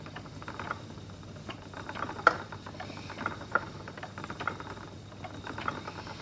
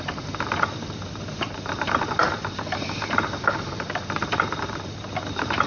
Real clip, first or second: first